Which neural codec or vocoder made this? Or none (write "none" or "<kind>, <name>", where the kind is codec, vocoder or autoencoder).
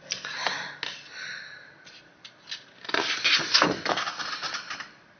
none